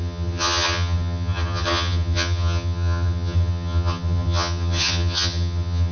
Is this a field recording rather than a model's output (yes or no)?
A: no